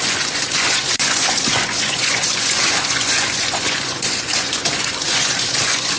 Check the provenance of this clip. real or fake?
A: fake